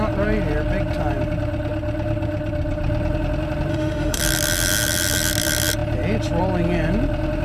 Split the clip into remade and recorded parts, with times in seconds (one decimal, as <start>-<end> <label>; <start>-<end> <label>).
0.0-3.7 recorded; 3.7-4.2 remade; 4.2-7.4 recorded